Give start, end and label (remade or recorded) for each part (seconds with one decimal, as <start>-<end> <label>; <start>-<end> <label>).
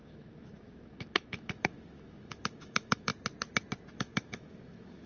0.0-3.1 remade; 3.1-3.9 recorded; 3.9-5.1 remade